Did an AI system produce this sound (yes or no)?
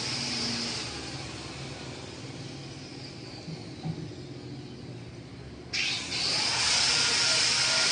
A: no